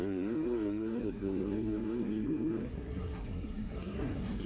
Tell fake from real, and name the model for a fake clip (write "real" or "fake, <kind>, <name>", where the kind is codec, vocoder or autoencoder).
fake, codec, SNAC